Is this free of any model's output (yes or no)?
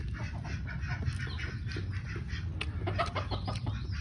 yes